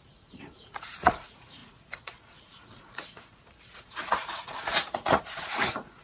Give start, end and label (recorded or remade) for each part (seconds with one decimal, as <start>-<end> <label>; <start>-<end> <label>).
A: 0.0-6.0 remade